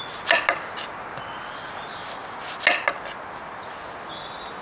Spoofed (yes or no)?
no